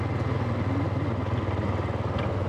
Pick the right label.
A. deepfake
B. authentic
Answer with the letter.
B